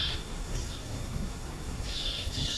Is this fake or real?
fake